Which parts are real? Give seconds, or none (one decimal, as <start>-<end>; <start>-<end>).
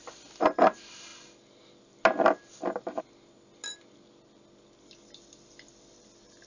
0.0-6.5